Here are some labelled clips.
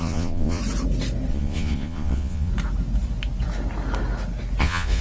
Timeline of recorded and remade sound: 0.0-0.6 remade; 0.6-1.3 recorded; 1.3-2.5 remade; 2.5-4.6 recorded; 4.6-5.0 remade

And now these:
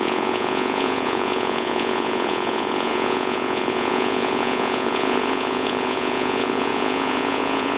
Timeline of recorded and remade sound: 0.0-7.8 remade